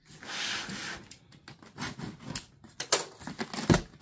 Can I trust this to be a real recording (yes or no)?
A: yes